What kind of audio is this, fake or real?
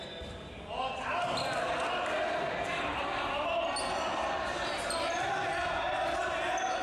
real